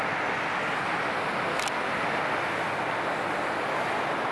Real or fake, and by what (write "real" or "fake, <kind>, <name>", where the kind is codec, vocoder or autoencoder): real